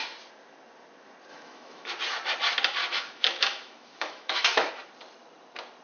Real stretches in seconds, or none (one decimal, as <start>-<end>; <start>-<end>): 0.0-1.3; 1.9-2.8; 4.7-5.8